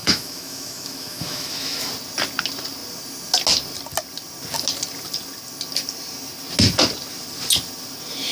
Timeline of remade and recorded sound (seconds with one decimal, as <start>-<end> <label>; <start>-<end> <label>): 0.0-1.9 remade; 1.9-8.3 recorded